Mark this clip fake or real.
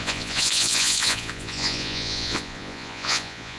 fake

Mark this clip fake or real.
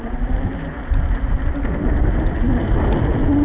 real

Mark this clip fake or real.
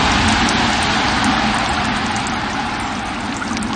real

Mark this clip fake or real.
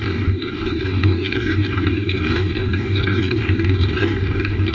fake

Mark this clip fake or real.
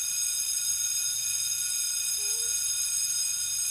real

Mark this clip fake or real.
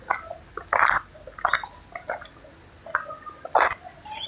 real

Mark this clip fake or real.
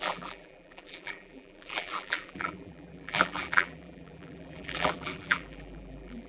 fake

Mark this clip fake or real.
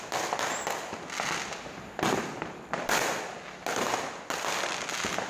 real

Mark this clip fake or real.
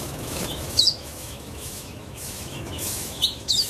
fake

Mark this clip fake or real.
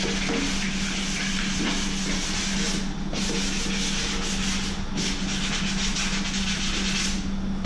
real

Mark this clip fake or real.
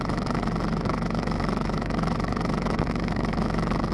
fake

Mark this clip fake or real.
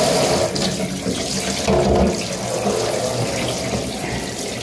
real